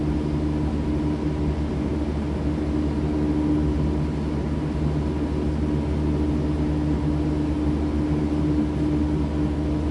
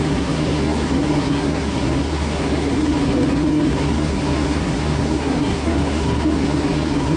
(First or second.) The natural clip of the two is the first